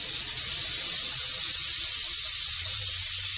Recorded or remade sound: recorded